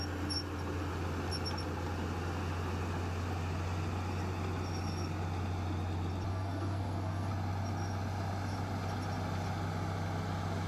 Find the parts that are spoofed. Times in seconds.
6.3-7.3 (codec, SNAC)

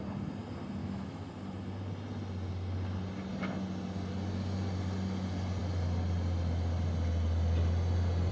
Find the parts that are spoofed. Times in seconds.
0.8-1.3 (autoencoder, DAC-VAE)

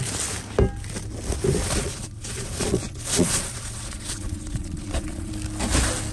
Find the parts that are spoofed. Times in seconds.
1.6-5.3 (vocoder, Vocos)

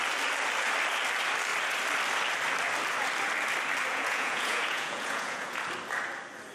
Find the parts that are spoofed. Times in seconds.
3.9-5.6 (vocoder, Vocos)

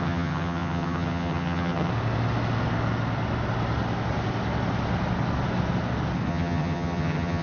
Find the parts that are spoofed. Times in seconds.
0.0-1.9 (vocoder, HiFi-GAN); 6.3-7.4

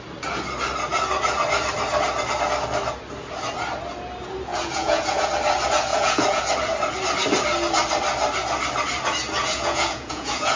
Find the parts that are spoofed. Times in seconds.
4.5-5.3 (vocoder, Vocos); 5.9-6.4; 9.4-10.6